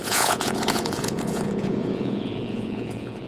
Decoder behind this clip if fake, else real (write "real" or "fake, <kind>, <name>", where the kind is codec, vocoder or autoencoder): fake, vocoder, Vocos